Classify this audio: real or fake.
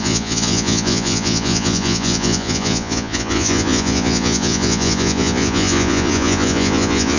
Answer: fake